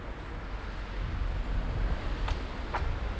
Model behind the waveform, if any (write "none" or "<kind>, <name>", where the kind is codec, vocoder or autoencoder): none